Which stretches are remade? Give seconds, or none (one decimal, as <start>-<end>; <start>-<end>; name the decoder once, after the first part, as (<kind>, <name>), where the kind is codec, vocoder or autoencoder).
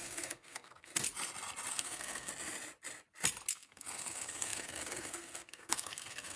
0.0-0.9 (codec, SNAC); 1.7-2.3; 3.5-6.4